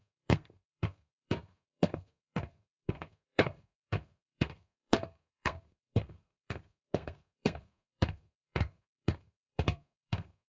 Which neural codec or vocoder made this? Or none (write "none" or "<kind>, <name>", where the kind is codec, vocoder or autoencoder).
codec, SNAC